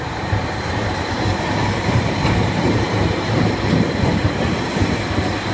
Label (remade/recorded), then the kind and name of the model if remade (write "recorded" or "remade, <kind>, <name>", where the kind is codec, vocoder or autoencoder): remade, vocoder, BigVGAN v2